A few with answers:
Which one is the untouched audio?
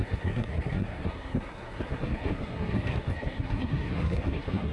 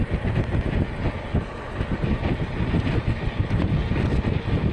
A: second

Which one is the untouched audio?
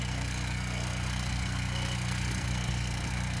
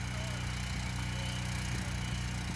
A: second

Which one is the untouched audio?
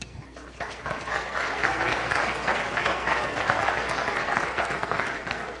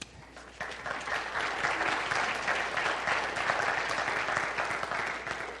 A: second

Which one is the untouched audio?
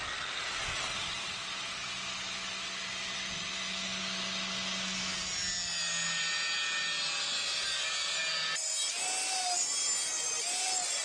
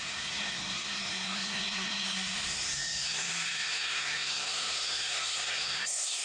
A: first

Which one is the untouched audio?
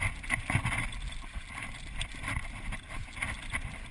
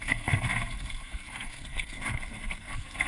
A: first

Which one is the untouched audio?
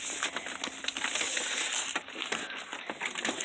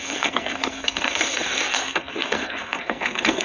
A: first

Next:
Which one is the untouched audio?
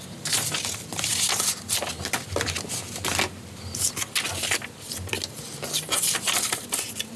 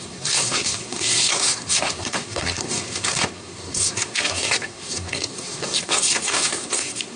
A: first